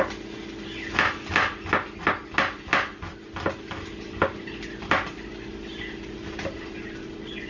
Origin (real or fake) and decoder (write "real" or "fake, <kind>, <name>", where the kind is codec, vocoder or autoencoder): real